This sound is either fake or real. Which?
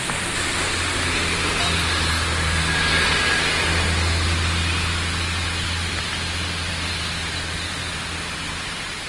real